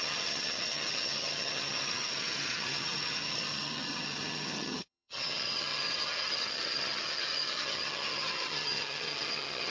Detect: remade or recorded remade